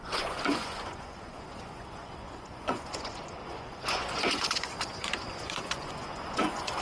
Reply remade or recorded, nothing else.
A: remade